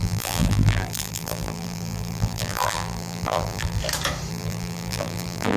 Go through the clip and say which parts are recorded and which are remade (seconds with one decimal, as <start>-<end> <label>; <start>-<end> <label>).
0.0-3.8 remade; 3.8-4.3 recorded; 4.3-5.6 remade